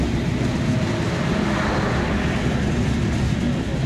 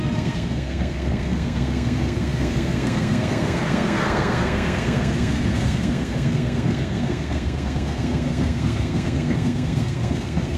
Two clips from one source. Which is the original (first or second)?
first